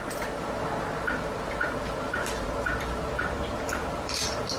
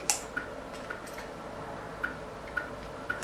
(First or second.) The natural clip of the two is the second